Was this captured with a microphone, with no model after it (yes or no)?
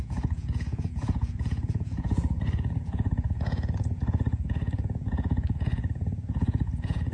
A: no